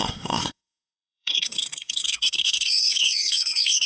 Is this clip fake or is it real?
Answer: fake